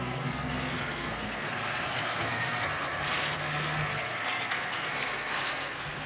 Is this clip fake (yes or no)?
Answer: yes